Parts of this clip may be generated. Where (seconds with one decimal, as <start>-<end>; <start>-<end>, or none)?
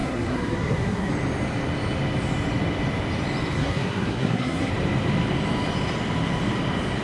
0.0-1.1; 3.6-4.7